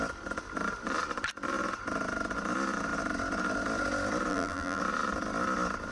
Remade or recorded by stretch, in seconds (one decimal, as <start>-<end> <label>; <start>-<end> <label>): 0.0-4.3 recorded; 4.3-4.8 remade; 4.8-5.9 recorded